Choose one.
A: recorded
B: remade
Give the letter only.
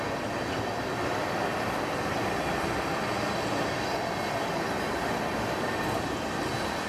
A